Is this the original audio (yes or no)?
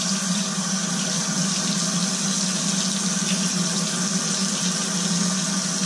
yes